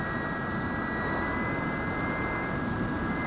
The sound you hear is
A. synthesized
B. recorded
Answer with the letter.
B